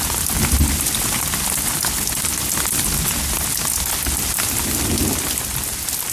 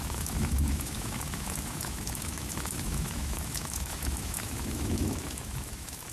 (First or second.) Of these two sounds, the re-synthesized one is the second